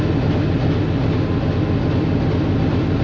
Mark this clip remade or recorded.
recorded